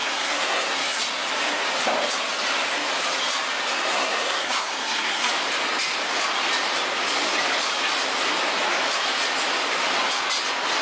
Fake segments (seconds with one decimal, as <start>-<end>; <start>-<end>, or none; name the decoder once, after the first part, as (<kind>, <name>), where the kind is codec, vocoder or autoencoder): 0.0-1.0 (codec, SNAC); 3.7-5.3